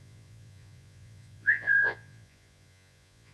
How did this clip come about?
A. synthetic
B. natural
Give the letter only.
A